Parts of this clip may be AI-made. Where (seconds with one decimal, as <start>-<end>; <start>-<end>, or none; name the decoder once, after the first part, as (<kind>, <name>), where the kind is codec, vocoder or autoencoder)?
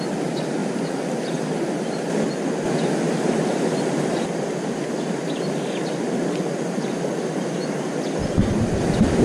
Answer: none